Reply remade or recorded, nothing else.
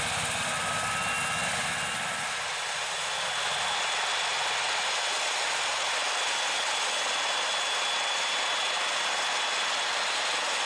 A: recorded